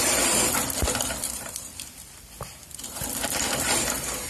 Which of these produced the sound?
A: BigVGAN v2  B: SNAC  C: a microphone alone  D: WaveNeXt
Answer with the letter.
A